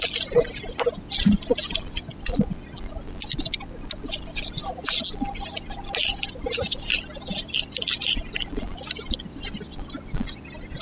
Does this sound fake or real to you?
real